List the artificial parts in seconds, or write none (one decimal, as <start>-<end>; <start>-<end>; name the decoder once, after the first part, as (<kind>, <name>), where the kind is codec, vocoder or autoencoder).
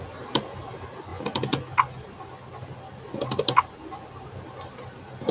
none